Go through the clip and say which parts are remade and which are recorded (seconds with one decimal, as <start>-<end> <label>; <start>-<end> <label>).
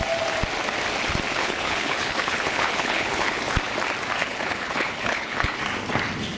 0.0-1.3 recorded; 1.3-3.4 remade; 3.4-4.2 recorded; 4.2-5.6 remade; 5.6-6.4 recorded